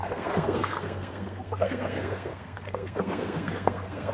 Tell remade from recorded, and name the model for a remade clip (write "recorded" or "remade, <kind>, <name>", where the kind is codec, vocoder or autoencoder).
remade, codec, SNAC